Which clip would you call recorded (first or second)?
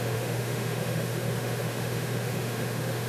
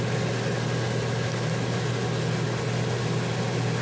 second